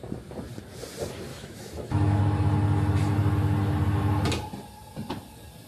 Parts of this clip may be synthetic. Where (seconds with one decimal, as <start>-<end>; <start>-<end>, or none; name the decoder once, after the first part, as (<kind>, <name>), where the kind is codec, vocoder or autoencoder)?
1.3-2.2 (autoencoder, DAC-VAE)